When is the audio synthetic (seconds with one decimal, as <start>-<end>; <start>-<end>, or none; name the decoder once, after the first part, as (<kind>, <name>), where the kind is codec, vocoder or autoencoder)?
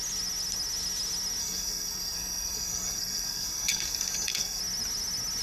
1.4-4.6 (codec, SNAC)